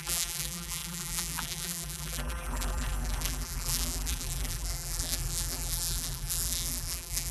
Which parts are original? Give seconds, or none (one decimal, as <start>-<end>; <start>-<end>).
none